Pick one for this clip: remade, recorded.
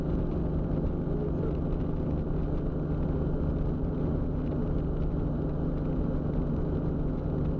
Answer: recorded